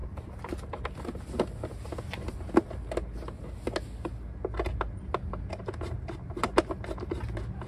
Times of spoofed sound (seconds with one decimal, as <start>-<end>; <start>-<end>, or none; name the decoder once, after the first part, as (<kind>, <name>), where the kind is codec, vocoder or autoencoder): none